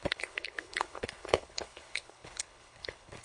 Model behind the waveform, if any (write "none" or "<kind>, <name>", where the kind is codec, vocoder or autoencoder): codec, HILCodec